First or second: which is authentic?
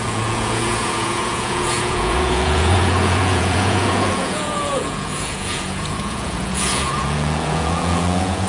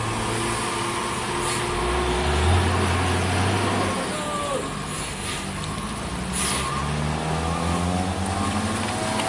second